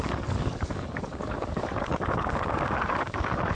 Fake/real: fake